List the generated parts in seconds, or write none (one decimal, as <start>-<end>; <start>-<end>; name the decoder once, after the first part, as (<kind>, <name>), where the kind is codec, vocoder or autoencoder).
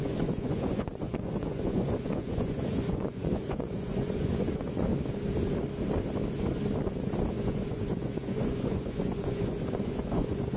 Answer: 0.0-4.9 (vocoder, Vocos); 7.3-10.6